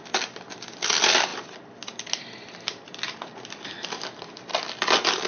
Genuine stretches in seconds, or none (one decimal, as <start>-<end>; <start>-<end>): 0.0-5.3